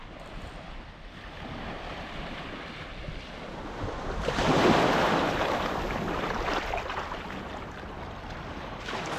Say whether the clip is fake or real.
real